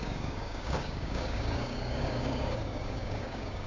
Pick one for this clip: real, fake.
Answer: fake